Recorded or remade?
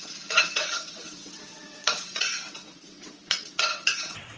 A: remade